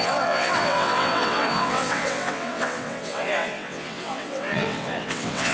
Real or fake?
fake